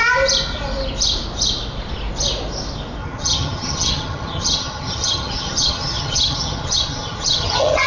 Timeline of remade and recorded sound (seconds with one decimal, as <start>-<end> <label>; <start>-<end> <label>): 0.0-3.0 recorded; 3.0-7.9 remade